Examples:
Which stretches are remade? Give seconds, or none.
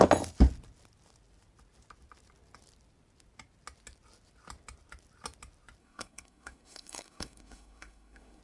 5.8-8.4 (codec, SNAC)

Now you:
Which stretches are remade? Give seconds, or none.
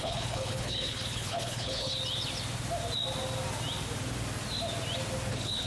0.0-1.9 (codec, HILCodec); 5.3-5.7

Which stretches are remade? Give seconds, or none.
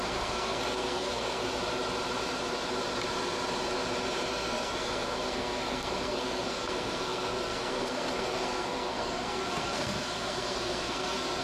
0.0-1.4 (codec, SNAC); 4.3-11.4